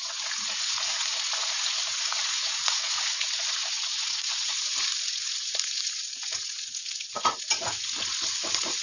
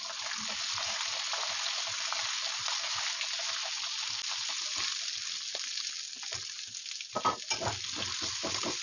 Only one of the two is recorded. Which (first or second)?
second